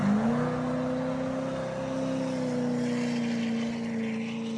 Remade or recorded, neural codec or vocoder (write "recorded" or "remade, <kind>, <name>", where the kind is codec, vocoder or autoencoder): recorded